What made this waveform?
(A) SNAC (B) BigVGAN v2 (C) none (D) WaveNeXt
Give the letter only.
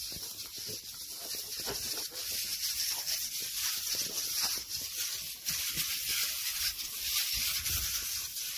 B